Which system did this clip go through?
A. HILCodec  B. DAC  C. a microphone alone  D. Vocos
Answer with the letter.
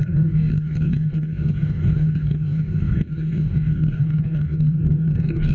B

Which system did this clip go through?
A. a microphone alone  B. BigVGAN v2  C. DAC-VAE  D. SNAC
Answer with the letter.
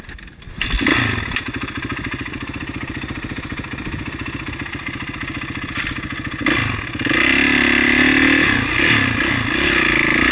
A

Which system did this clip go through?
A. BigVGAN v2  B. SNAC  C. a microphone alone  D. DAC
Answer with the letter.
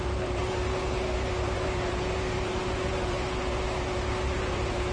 A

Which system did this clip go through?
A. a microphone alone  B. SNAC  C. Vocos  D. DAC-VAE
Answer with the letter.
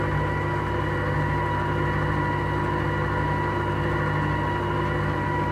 A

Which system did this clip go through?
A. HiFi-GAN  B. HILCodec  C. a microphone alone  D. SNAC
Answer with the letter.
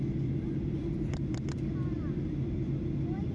C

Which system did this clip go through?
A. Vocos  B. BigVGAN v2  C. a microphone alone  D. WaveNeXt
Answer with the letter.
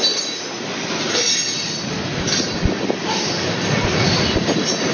C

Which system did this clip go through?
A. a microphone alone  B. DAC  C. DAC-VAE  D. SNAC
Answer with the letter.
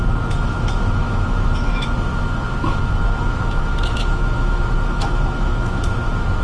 C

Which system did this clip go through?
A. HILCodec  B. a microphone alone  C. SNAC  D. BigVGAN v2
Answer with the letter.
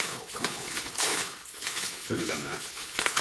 A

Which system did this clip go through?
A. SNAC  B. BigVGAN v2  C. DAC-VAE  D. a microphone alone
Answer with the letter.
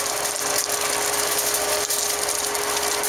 D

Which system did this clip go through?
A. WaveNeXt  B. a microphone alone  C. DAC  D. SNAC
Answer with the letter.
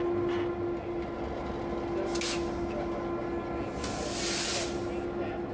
B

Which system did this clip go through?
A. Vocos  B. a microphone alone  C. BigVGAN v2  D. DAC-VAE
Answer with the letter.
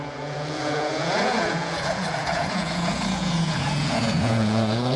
A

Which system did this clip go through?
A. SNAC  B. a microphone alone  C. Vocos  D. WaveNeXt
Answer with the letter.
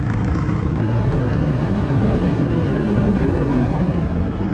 A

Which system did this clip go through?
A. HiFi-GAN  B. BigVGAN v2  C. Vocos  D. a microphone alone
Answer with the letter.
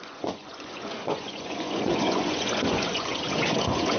C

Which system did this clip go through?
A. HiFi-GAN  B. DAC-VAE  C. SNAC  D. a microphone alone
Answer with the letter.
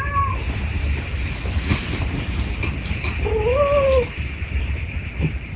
D